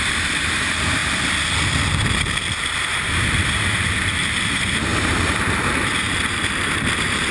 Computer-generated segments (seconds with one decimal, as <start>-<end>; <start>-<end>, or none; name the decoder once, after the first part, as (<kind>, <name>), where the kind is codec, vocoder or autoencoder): 0.0-1.0 (vocoder, BigVGAN v2); 3.9-7.3